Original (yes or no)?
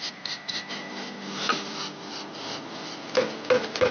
yes